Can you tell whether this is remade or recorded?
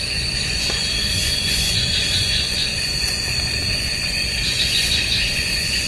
remade